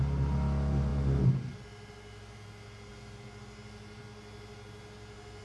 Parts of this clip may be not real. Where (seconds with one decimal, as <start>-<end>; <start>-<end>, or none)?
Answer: none